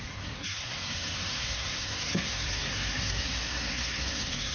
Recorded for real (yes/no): no